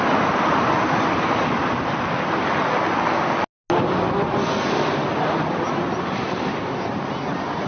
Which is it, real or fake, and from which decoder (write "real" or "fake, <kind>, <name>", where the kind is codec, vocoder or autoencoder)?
real